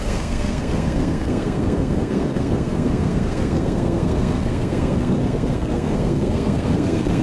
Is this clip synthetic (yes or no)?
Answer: yes